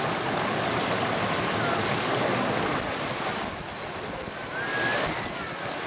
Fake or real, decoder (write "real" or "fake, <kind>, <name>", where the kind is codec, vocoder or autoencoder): real